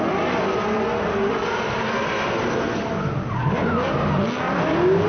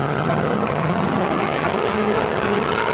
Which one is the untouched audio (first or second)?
first